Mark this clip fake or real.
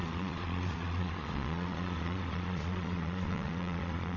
fake